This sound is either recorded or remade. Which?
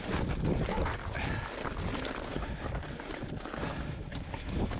recorded